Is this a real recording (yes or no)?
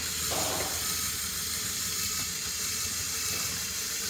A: yes